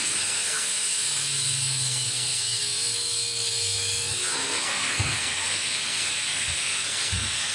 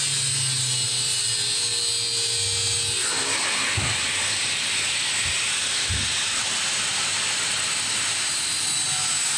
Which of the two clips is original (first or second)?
second